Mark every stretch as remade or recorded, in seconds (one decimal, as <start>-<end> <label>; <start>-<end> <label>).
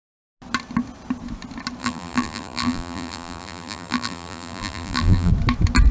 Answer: 0.0-1.8 recorded; 1.8-5.3 remade; 5.3-5.9 recorded